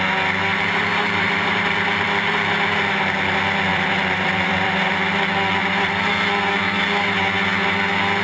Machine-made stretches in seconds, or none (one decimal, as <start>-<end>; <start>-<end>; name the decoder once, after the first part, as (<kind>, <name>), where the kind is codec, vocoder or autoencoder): 0.9-2.3 (vocoder, BigVGAN v2); 3.7-4.9; 5.6-6.1